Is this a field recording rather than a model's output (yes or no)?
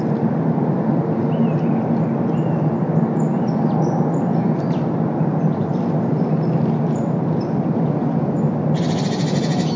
yes